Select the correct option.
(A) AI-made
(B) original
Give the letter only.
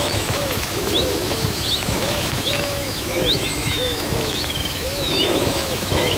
A